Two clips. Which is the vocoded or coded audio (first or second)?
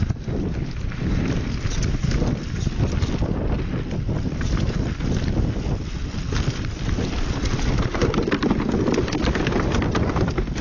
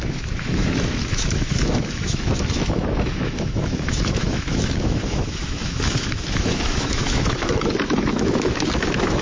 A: second